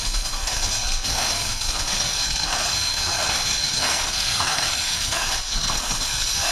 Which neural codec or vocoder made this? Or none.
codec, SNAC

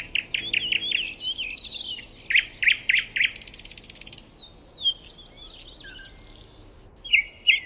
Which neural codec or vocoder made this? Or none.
none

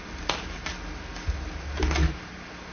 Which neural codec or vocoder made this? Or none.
none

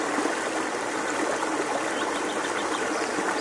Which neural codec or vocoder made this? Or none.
none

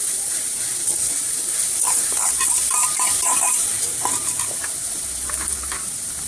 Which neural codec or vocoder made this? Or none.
vocoder, BigVGAN v2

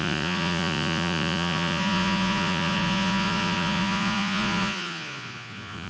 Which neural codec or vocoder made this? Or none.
vocoder, Vocos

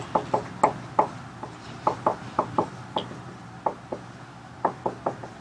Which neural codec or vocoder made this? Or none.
none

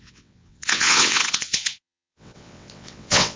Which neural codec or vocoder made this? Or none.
vocoder, WaveNeXt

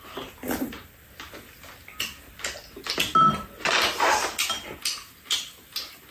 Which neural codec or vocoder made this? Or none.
none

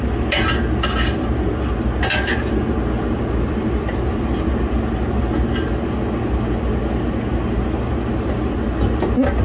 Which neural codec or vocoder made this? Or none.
none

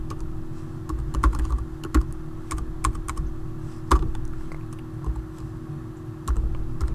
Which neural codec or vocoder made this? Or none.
none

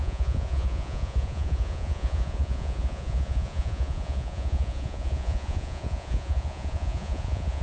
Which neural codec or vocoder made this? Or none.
vocoder, Vocos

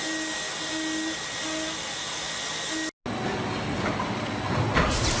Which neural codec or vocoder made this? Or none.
none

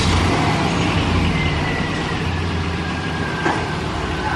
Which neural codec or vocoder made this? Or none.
none